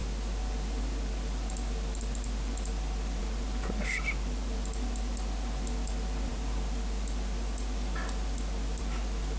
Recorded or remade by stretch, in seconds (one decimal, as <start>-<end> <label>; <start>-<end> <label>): 0.0-9.4 recorded